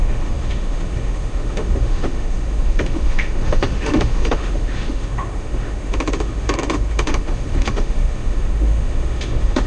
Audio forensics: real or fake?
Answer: fake